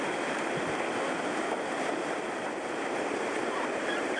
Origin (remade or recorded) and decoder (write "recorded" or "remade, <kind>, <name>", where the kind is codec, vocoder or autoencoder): recorded